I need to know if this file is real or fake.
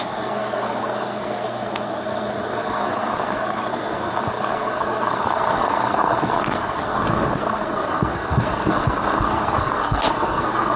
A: fake